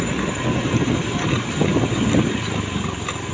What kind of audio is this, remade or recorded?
recorded